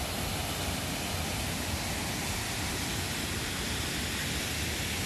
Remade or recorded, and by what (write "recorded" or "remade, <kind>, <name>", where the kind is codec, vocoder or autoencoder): recorded